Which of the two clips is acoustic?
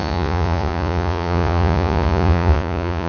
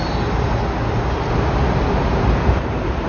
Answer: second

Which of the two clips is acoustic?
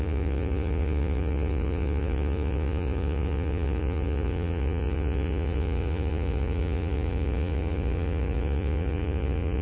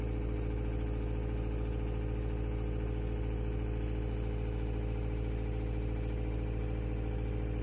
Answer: second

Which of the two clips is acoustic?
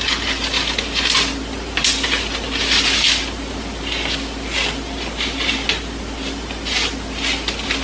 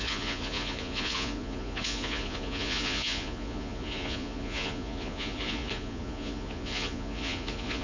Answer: first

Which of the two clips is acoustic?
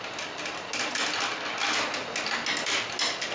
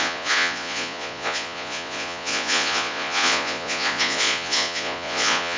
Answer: first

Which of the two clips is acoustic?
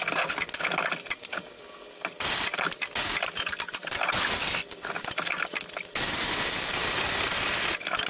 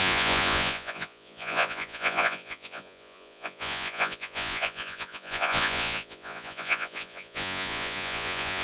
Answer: first